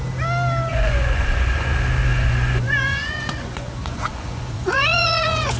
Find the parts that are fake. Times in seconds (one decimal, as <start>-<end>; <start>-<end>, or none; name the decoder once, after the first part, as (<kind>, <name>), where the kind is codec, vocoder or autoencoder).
0.7-1.7 (vocoder, Vocos); 2.1-5.6